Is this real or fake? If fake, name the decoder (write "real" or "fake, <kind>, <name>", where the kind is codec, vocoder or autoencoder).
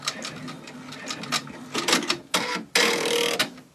real